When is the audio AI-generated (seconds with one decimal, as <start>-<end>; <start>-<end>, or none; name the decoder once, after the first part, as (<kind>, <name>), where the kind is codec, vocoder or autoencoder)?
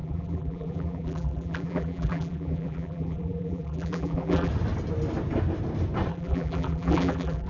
0.0-4.5 (vocoder, BigVGAN v2); 6.1-7.5